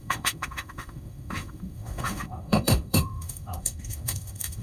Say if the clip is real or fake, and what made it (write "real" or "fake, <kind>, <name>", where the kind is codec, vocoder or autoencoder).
fake, autoencoder, DAC-VAE